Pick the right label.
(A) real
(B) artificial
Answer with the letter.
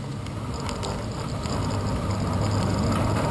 A